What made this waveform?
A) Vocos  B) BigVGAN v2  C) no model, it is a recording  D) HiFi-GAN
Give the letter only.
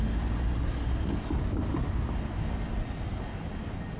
C